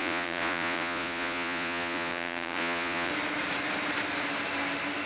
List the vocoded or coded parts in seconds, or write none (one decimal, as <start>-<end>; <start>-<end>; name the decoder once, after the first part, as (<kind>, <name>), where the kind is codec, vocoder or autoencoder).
0.0-3.1 (vocoder, Vocos)